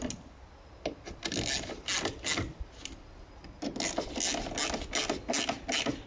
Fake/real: real